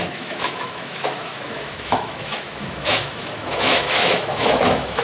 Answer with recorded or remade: remade